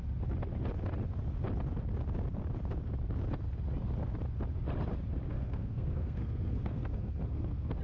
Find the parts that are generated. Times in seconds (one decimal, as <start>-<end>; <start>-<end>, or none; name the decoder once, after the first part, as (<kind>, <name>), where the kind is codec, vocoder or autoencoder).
5.3-7.8 (codec, SNAC)